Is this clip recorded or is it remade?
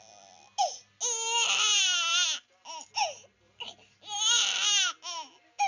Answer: recorded